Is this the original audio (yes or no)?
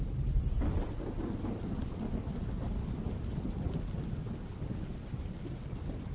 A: yes